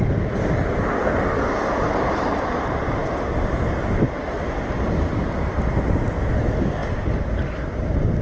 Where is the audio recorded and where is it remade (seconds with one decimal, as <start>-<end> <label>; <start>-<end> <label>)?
0.0-8.2 recorded